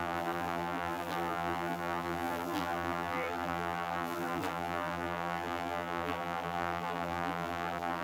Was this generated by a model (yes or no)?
yes